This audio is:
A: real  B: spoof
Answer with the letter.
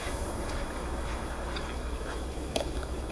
B